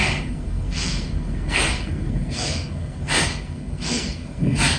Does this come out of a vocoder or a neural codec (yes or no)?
yes